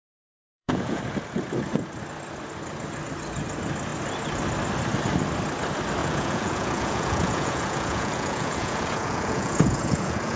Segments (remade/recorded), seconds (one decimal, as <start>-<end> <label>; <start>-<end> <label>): 0.0-0.4 recorded; 0.4-1.0 remade; 1.0-6.0 recorded; 6.0-10.4 remade